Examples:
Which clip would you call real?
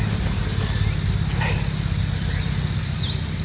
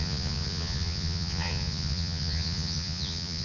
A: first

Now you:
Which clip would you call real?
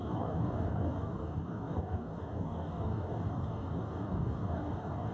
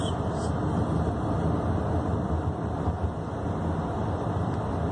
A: second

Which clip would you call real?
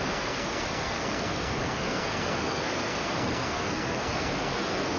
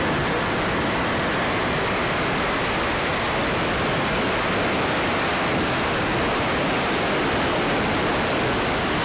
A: second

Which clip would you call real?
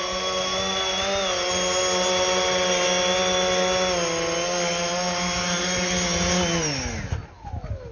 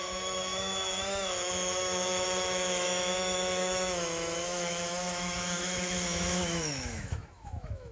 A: first